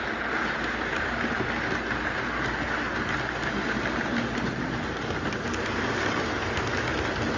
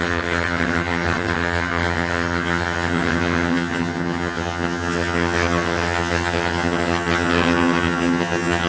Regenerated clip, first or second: second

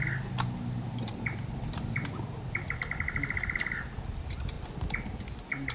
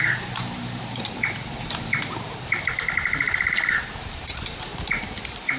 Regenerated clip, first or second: second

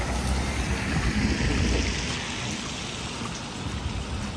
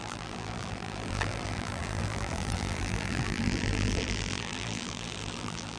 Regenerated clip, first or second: second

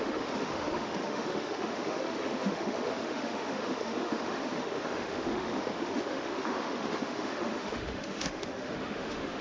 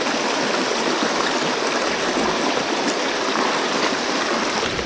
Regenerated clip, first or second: first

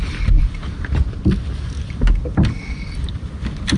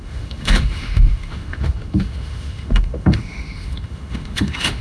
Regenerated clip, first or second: second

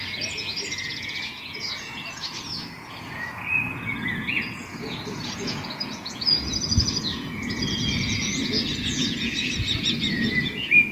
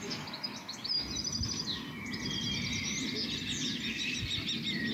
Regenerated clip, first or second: first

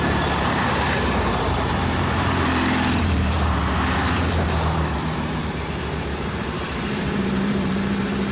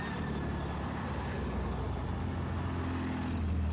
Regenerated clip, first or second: first